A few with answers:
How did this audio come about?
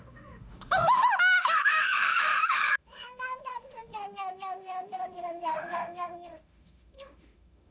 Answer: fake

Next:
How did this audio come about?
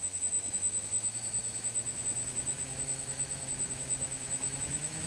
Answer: fake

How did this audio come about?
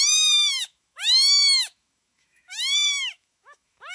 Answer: fake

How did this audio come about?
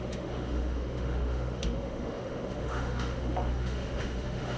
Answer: fake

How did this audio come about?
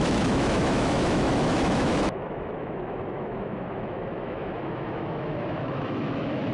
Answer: fake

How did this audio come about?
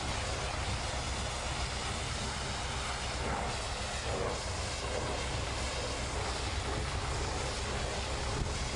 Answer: real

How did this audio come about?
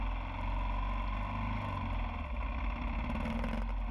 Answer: real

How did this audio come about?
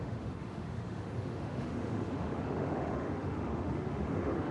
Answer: fake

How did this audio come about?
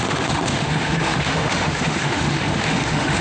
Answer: fake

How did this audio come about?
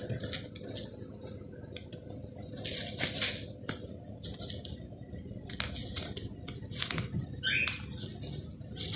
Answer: real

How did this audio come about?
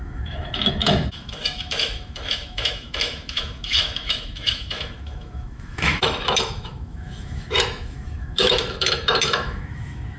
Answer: fake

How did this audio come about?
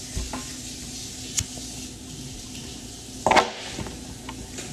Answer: real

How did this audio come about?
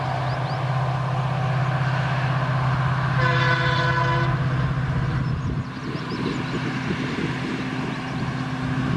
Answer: real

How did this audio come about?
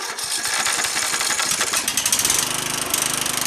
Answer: real